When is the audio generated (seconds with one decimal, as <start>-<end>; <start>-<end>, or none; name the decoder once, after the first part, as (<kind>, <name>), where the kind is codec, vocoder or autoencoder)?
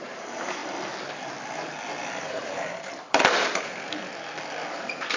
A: 0.0-0.6 (vocoder, BigVGAN v2); 2.2-4.1; 4.7-5.2